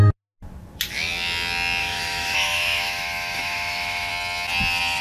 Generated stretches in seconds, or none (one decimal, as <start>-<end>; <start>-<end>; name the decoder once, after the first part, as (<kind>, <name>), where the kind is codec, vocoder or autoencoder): 1.8-4.1 (autoencoder, DAC-VAE)